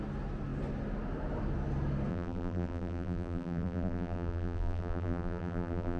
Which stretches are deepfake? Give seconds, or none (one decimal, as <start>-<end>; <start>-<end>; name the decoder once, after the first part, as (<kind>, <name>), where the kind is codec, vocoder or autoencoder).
2.1-6.0 (vocoder, BigVGAN v2)